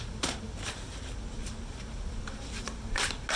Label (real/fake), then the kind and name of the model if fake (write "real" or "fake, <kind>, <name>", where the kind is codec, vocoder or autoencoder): real